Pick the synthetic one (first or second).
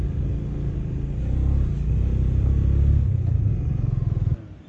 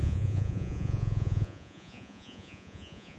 second